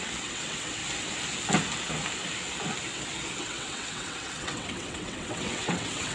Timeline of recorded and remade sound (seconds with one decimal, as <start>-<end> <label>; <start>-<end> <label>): 0.0-0.8 remade; 0.8-3.4 recorded; 3.4-6.1 remade